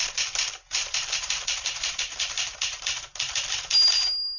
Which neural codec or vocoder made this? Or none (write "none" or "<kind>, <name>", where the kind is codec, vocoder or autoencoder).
vocoder, BigVGAN v2